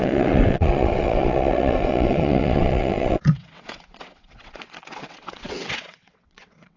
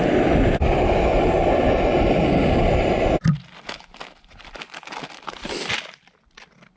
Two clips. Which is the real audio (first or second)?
second